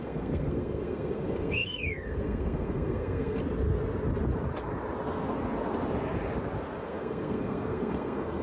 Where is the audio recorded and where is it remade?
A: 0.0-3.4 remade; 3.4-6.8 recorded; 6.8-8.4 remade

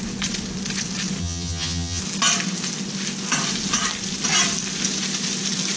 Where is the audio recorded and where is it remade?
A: 0.0-1.2 recorded; 1.2-2.0 remade; 2.0-5.8 recorded

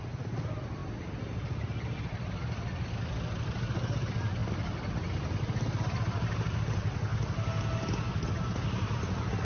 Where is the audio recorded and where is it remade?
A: 0.0-9.4 recorded